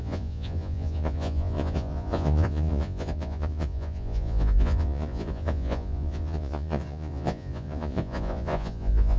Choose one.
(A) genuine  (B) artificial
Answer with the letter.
B